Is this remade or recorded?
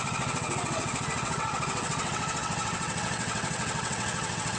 remade